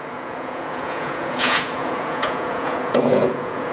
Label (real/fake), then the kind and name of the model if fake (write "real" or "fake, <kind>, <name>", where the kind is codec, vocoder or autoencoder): fake, vocoder, Vocos